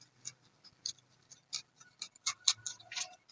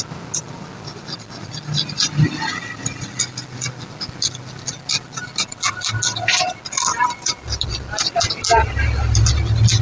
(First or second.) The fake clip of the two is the first